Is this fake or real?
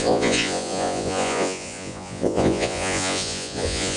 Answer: fake